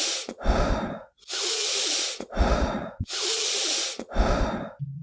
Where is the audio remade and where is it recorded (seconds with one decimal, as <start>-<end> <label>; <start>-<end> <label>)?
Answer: 0.0-1.0 recorded; 1.0-3.5 remade; 3.5-5.0 recorded